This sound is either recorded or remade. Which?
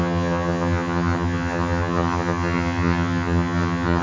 remade